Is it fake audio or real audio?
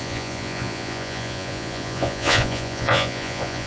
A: fake